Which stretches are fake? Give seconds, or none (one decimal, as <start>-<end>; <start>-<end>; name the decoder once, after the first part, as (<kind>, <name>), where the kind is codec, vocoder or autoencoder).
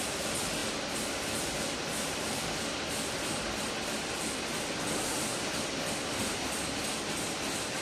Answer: 0.6-3.7 (vocoder, BigVGAN v2); 5.3-6.8